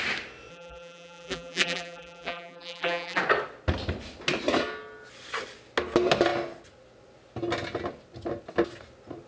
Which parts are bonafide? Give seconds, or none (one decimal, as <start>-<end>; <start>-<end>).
0.0-0.5; 3.2-9.3